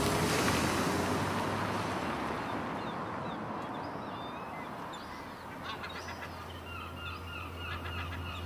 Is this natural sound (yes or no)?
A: yes